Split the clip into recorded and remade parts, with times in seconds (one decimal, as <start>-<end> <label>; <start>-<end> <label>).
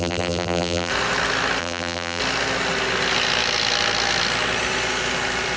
0.0-0.9 remade; 0.9-1.6 recorded; 1.6-2.2 remade; 2.2-5.6 recorded